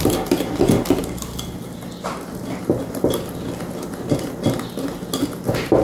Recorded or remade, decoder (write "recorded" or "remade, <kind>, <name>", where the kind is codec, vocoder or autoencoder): recorded